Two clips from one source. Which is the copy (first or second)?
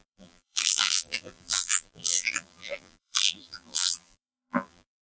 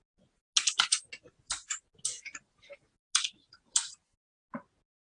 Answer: first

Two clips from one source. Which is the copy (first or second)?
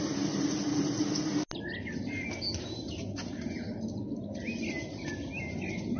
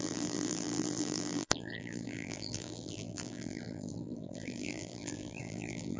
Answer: second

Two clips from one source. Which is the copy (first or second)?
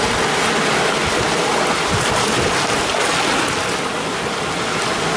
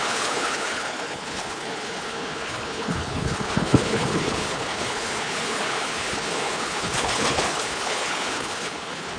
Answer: second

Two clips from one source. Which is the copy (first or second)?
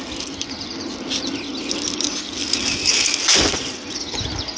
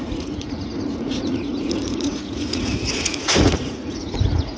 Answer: second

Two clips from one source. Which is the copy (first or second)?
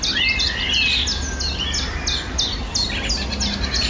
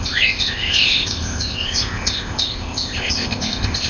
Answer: second